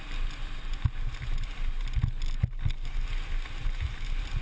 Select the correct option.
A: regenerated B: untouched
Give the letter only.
B